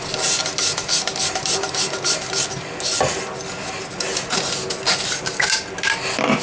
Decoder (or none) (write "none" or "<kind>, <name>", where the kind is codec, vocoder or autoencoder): none